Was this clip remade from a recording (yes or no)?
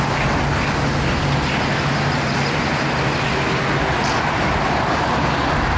no